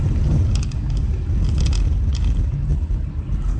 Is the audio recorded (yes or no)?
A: yes